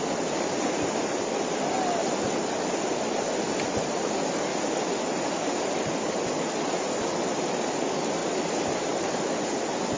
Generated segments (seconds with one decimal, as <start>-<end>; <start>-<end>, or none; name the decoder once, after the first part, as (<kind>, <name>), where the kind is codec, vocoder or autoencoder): none